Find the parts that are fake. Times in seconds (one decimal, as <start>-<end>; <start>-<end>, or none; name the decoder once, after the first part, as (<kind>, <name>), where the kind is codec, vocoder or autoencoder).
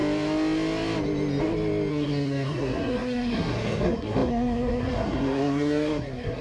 1.9-6.4 (codec, SNAC)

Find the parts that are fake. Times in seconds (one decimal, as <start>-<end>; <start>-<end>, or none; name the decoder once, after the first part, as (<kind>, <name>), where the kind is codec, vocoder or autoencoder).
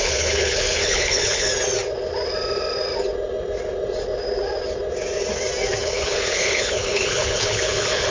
0.0-1.5 (codec, HILCodec); 5.8-8.1